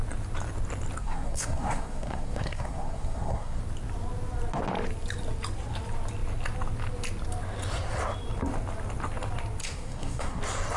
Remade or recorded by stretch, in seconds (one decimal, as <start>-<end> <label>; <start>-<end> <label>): 0.0-1.0 recorded; 1.0-3.6 remade; 3.6-9.6 recorded; 9.6-10.4 remade; 10.4-10.8 recorded